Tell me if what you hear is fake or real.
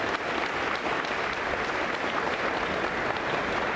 real